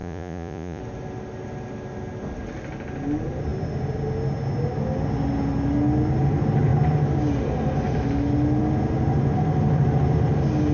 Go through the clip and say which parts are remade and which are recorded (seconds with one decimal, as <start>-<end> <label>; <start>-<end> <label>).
0.0-0.8 remade; 0.8-10.7 recorded